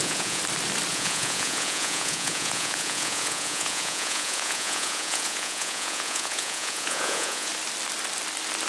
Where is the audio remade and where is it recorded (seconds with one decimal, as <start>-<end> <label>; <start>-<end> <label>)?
0.0-0.4 remade; 0.4-0.9 recorded; 0.9-7.5 remade; 7.5-8.7 recorded